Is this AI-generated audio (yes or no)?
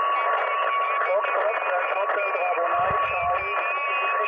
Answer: no